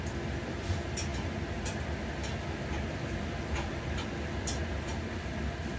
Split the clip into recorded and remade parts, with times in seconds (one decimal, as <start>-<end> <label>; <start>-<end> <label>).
0.0-5.8 recorded